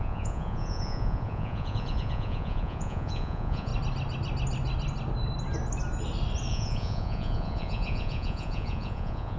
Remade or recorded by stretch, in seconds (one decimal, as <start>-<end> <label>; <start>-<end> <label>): 0.0-3.7 remade; 3.7-6.5 recorded; 6.5-9.4 remade